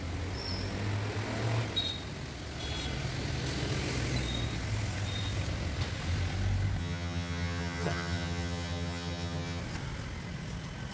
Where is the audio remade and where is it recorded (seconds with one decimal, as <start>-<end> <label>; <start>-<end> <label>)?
0.0-6.8 recorded; 6.8-9.6 remade; 9.6-10.9 recorded